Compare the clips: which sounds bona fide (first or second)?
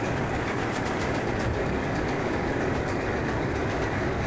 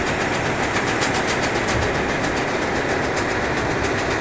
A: second